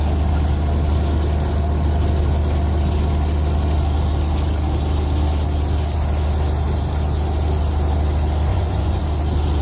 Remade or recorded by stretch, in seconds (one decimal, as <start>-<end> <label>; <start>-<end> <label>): 0.0-8.5 recorded; 8.5-9.0 remade; 9.0-9.6 recorded